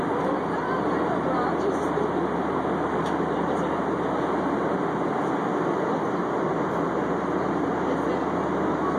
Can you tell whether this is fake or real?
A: real